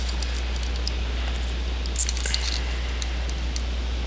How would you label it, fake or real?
real